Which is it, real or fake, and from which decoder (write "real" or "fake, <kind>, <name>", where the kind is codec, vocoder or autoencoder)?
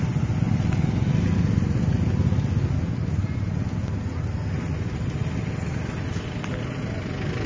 real